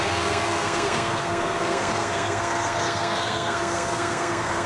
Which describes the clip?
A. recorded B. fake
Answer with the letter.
B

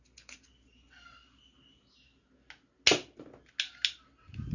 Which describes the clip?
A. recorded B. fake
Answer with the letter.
A